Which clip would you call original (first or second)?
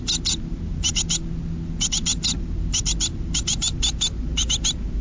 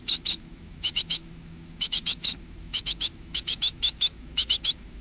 first